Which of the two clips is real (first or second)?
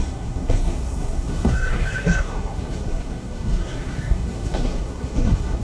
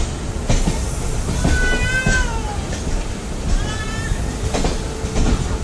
second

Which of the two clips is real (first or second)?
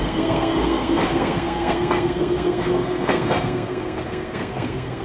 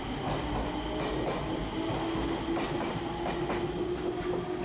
second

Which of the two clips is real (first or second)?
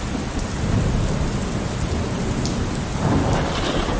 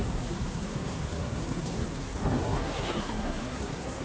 first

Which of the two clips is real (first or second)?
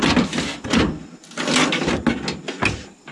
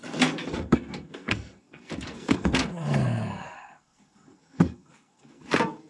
first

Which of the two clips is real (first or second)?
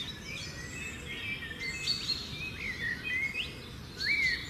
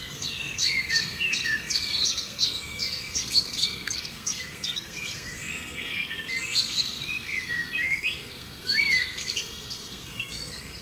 first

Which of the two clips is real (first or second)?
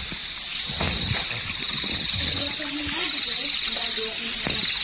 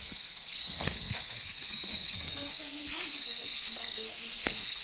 first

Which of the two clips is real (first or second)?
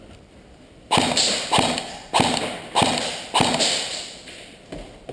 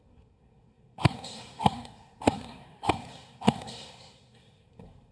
first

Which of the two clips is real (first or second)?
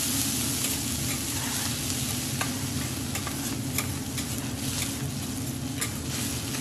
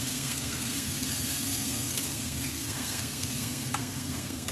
first